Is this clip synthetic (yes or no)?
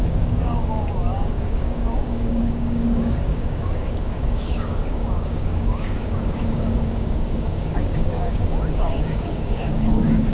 yes